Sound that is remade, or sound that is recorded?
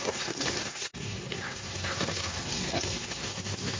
remade